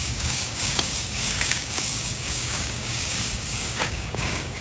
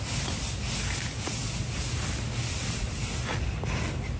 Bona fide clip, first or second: second